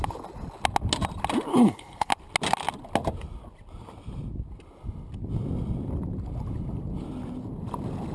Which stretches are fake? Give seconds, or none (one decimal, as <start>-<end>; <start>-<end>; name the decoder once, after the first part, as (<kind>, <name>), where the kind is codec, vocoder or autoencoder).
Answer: 1.5-2.1 (codec, HILCodec)